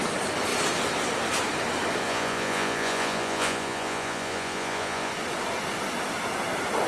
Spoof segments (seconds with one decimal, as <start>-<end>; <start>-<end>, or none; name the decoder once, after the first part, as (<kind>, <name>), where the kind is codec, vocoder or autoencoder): 2.0-5.1 (vocoder, Vocos)